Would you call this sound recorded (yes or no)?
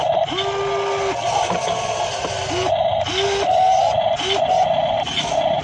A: yes